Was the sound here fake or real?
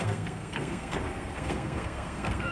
fake